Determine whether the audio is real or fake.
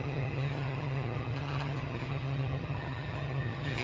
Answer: fake